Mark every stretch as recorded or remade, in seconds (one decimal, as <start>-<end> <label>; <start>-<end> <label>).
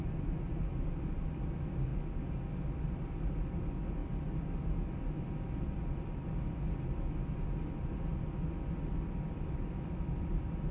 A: 0.0-10.7 recorded